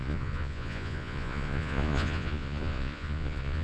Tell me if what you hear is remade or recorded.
remade